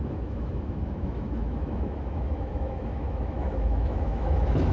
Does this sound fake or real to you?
fake